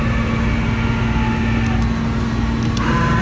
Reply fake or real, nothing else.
real